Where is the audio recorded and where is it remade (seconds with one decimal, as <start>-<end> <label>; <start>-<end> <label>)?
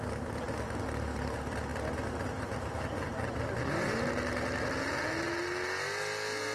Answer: 0.0-6.5 recorded